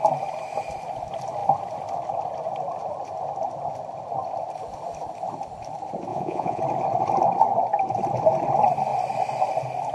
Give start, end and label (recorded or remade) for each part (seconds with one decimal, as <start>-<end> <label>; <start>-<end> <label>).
0.0-6.1 recorded; 6.1-6.6 remade; 6.6-9.9 recorded